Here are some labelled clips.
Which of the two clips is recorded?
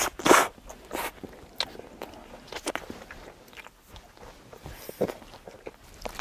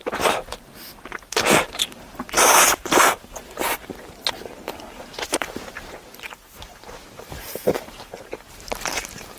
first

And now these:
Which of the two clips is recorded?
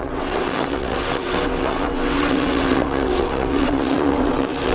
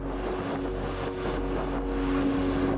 second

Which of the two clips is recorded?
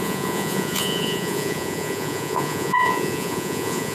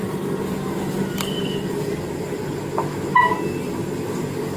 second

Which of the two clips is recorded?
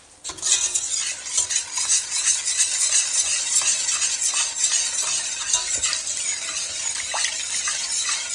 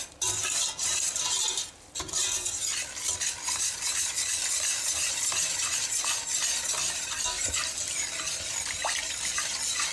first